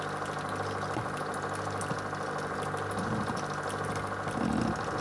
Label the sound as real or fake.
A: real